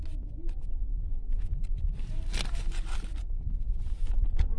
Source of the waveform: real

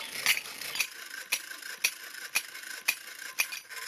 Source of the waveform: real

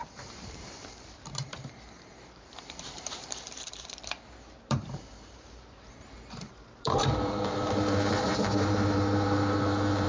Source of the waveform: fake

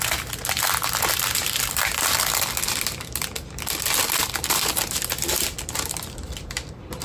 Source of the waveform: real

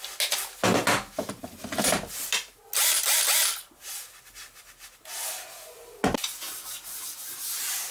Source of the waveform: real